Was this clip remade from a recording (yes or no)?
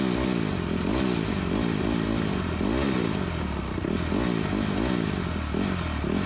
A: no